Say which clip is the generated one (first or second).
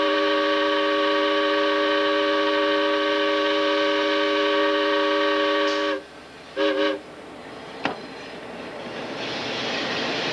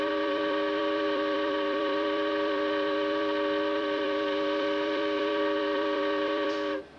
second